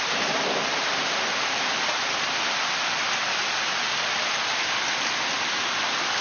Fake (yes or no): no